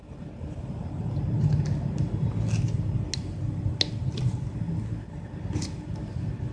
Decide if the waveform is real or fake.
real